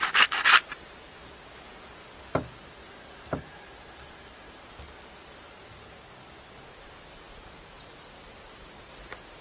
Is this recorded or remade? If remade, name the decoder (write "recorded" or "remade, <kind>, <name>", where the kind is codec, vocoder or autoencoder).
recorded